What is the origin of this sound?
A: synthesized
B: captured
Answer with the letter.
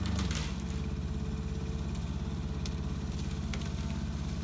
B